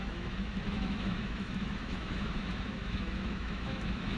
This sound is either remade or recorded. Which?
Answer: remade